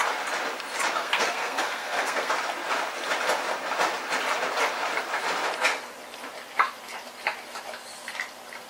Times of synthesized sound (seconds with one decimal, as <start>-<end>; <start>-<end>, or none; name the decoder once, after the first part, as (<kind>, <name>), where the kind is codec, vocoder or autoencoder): 1.0-2.3 (codec, SNAC)